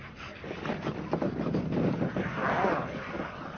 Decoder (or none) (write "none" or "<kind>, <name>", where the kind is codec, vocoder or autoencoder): none